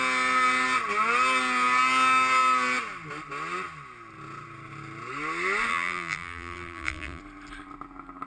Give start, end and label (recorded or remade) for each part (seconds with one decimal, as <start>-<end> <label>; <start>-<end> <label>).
0.0-5.7 recorded; 5.7-7.2 remade; 7.2-8.3 recorded